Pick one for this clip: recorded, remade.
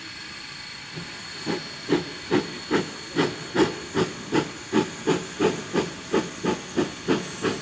recorded